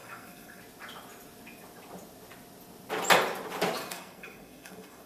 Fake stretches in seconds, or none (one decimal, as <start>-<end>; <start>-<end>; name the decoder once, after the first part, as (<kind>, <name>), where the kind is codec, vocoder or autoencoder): 0.0-0.6 (codec, SNAC); 3.8-5.1